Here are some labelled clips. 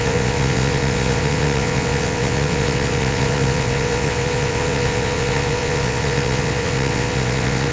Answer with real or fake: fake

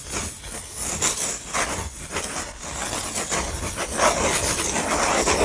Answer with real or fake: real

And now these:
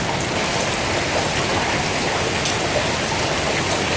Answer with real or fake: real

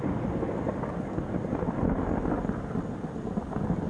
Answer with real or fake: real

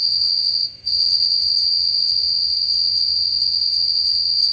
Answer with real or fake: fake